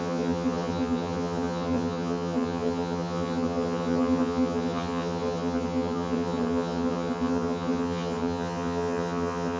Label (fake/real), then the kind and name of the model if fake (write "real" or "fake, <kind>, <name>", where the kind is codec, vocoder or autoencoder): fake, vocoder, HiFi-GAN